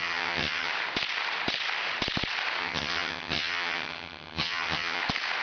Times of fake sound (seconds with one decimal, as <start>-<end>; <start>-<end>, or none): 0.0-0.7; 2.6-5.0